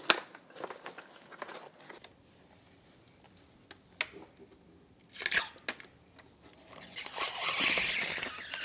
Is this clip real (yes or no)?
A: yes